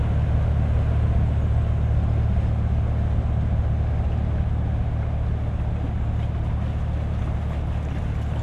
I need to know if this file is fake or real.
real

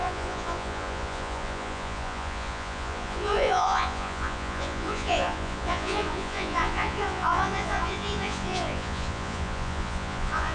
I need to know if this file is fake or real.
fake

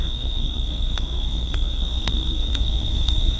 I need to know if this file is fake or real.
fake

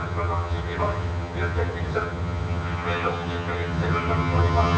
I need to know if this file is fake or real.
fake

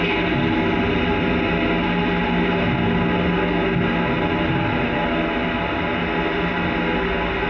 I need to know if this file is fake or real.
real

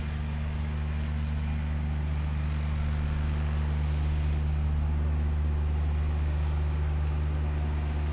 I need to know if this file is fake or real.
real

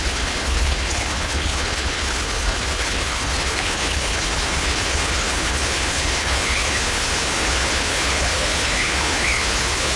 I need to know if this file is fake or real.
fake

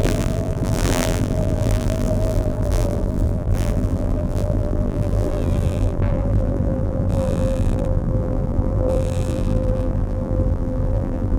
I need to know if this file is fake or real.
fake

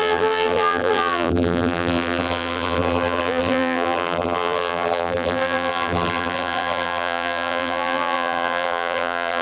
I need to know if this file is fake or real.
fake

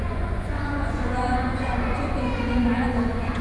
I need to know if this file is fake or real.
fake